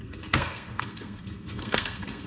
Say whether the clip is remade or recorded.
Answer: remade